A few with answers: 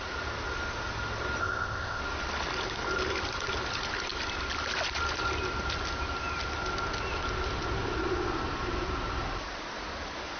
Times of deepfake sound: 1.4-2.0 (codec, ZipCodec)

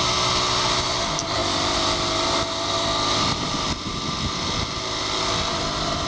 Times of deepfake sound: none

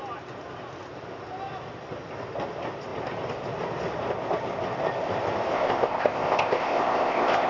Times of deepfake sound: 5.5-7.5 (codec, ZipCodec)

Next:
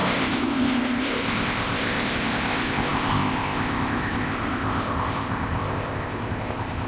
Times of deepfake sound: 0.0-6.9 (codec, ZipCodec)

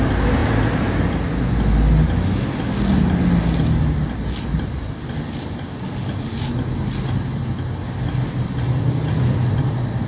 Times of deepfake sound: none

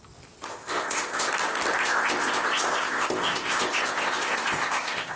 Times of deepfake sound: 0.5-1.3 (codec, ZipCodec); 1.8-5.2

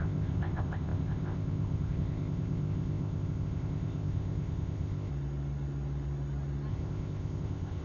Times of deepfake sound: 0.0-5.1 (codec, ZipCodec); 6.7-7.8